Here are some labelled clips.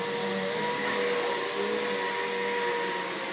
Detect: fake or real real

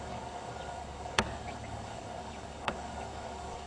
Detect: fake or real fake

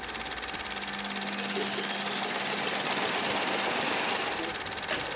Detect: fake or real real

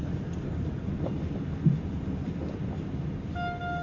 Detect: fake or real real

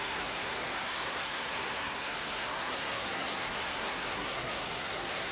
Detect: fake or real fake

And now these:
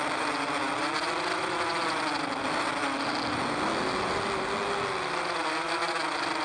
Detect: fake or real real